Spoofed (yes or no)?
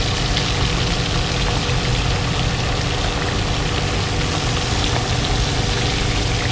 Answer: no